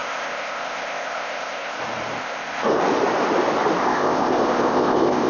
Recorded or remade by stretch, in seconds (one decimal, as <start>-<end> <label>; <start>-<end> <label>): 0.0-1.8 remade; 1.8-2.2 recorded; 2.2-2.8 remade; 2.8-3.8 recorded; 3.8-5.3 remade